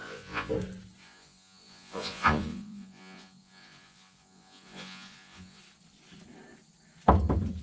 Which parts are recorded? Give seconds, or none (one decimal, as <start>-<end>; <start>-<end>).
0.5-1.0; 5.6-7.6